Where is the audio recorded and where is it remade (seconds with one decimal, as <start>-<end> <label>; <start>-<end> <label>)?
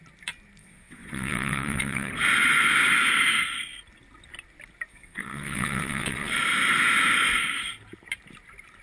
0.0-0.6 recorded; 0.6-2.1 remade; 2.1-4.9 recorded; 4.9-6.4 remade; 6.4-8.8 recorded